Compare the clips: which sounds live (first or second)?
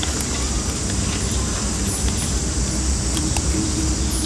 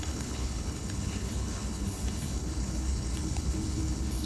first